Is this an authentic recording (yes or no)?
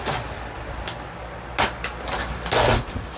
yes